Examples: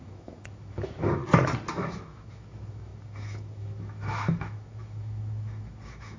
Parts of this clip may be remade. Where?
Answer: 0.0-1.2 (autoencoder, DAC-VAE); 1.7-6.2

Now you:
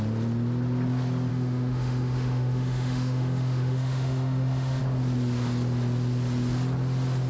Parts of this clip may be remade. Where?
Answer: 1.3-4.8 (autoencoder, DAC-VAE)

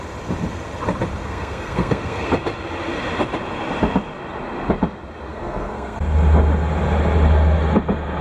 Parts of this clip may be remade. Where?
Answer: 1.2-2.3 (codec, SNAC); 5.3-6.0

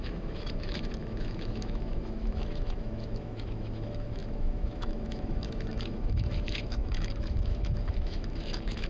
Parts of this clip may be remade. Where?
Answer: 0.0-8.9 (autoencoder, DAC-VAE)

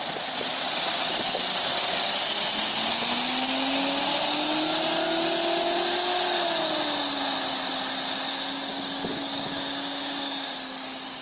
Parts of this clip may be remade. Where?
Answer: 8.7-11.2 (codec, DAC)